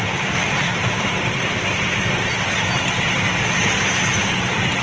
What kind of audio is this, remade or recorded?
remade